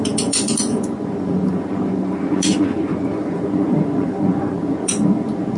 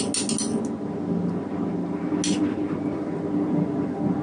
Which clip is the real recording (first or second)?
second